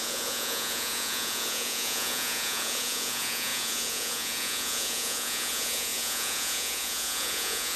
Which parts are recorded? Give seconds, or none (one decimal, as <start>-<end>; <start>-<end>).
none